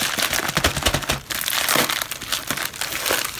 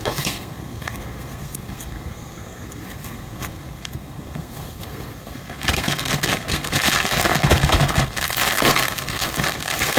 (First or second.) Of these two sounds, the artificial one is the second